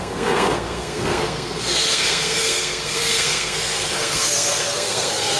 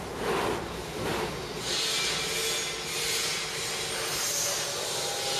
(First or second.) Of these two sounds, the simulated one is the first